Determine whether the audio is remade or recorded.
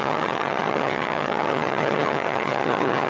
remade